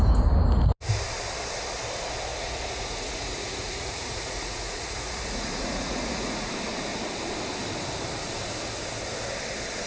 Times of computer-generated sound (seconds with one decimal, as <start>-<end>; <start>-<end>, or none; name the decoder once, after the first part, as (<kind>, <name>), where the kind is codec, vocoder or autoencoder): 2.3-6.5 (vocoder, Vocos)